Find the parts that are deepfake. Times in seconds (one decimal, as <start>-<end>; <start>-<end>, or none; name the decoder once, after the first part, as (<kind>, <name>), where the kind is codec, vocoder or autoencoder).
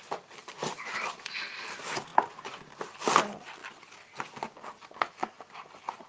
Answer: none